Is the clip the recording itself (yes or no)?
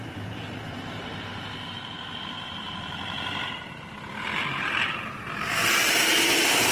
no